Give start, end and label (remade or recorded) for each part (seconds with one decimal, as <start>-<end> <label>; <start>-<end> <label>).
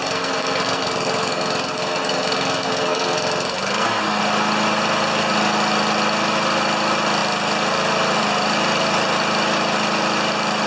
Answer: 0.0-4.2 remade; 4.2-10.7 recorded